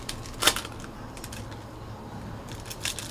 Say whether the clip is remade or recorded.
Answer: recorded